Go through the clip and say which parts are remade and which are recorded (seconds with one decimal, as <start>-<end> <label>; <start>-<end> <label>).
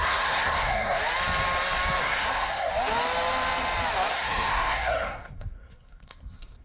0.0-1.0 remade; 1.0-2.0 recorded; 2.0-2.7 remade; 2.7-4.1 recorded; 4.1-6.6 remade